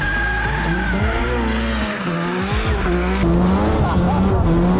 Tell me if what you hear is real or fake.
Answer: real